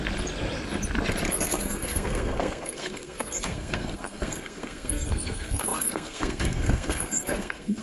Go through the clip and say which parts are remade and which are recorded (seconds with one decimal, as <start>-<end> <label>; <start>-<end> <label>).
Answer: 0.0-1.3 recorded; 1.3-7.8 remade